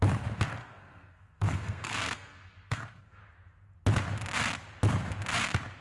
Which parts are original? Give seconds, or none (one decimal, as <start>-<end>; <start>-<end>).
0.0-0.6; 3.2-5.8